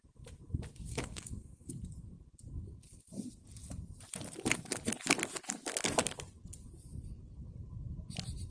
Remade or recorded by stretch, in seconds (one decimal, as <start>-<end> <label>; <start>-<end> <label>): 0.0-0.9 recorded; 0.9-1.7 remade; 1.7-8.5 recorded